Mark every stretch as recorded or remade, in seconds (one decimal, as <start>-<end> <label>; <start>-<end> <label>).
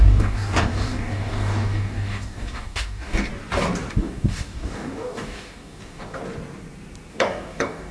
0.0-3.3 remade; 3.3-3.9 recorded; 3.9-6.2 remade; 6.2-7.1 recorded; 7.1-7.9 remade